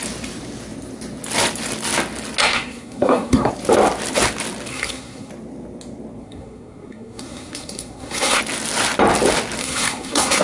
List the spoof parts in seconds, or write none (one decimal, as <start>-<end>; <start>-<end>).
2.4-3.5; 4.7-5.3; 6.2-8.4; 9.6-10.4